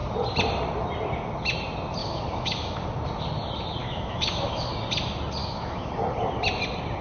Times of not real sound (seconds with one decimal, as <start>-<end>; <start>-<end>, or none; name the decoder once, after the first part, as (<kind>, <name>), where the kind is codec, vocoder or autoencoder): 2.0-2.8 (autoencoder, DAC-VAE); 3.8-4.7; 5.4-5.9